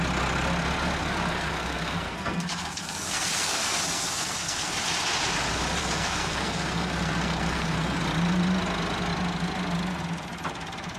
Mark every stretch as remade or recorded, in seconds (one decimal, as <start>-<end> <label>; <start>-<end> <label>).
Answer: 0.0-1.0 recorded; 1.0-4.7 remade; 4.7-5.8 recorded; 5.8-8.0 remade; 8.0-11.0 recorded